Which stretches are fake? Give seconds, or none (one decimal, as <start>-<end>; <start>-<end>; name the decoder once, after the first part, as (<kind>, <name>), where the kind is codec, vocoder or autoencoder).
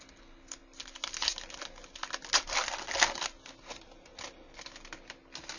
none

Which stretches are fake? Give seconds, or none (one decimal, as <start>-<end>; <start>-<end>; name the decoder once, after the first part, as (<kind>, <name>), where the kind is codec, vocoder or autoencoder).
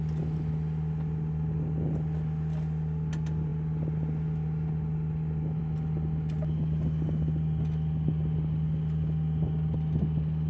none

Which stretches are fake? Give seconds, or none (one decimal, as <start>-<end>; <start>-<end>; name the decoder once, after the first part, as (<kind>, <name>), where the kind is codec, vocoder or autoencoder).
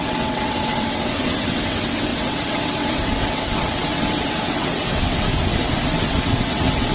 0.0-5.3 (vocoder, WaveNeXt); 5.9-6.9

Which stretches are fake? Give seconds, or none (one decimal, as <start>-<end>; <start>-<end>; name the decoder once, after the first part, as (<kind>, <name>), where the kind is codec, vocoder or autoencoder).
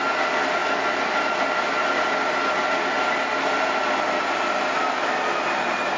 none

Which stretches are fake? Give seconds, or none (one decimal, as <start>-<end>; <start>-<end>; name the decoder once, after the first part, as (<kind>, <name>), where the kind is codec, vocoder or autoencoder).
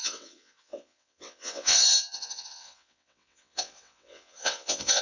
0.0-5.0 (vocoder, WaveNeXt)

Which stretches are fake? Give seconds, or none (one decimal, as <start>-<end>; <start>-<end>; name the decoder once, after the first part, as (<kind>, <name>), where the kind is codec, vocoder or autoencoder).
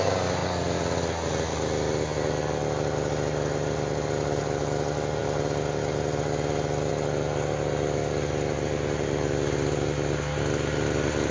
none